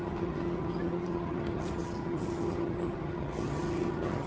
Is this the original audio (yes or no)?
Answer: no